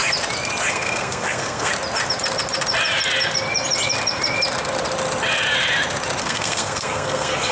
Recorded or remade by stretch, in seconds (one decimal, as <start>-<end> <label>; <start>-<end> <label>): 0.0-0.7 recorded; 0.7-1.7 remade; 1.7-6.2 recorded; 6.2-7.5 remade